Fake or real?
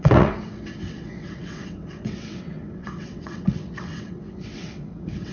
fake